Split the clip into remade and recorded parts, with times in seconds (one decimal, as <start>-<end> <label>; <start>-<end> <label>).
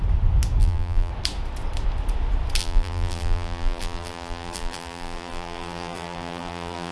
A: 0.0-0.6 recorded; 0.6-1.1 remade; 1.1-2.6 recorded; 2.6-6.9 remade